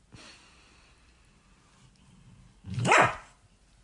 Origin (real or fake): real